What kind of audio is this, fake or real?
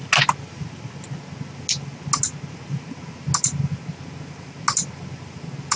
real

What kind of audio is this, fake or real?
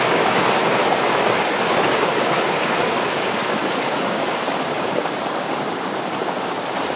fake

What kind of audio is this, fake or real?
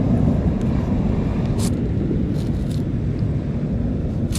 real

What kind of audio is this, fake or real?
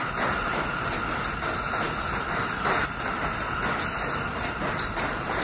real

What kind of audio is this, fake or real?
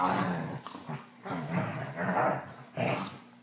real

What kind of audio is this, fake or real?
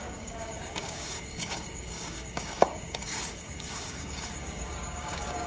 fake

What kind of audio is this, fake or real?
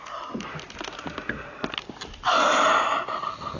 real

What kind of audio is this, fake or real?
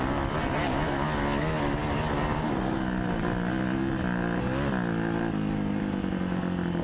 real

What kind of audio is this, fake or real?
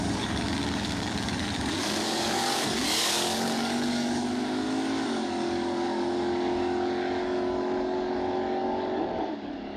fake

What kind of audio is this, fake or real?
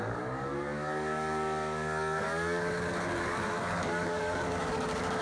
fake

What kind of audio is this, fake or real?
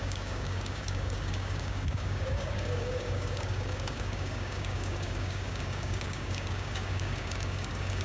fake